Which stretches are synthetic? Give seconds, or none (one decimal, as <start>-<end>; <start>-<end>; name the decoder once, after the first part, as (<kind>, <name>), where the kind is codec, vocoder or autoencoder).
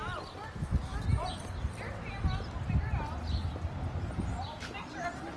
0.0-0.9 (vocoder, BigVGAN v2); 4.0-5.4